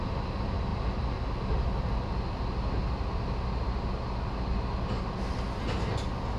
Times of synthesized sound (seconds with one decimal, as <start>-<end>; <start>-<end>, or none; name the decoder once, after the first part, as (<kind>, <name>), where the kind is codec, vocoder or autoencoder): none